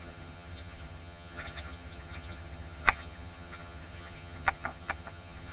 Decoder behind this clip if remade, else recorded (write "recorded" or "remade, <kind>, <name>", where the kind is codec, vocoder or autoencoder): remade, vocoder, HiFi-GAN